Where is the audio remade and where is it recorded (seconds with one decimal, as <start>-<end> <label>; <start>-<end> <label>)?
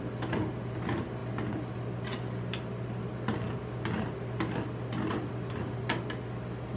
0.0-6.8 recorded